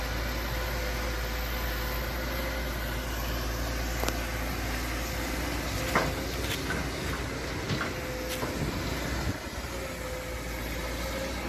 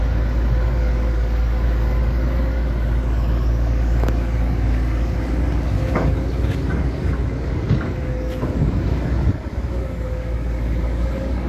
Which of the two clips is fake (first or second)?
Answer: second